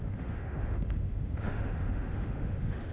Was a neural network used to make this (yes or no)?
yes